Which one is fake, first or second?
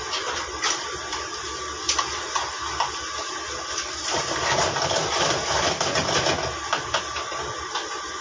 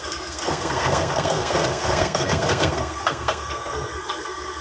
second